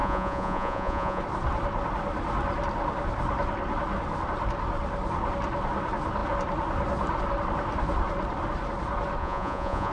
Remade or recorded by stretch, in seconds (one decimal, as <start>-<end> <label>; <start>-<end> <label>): 0.0-1.2 remade; 1.2-9.2 recorded; 9.2-9.9 remade